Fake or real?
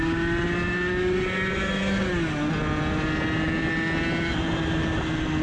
real